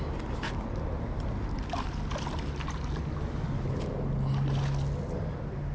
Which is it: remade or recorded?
recorded